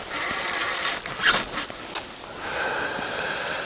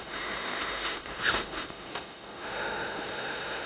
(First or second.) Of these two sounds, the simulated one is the second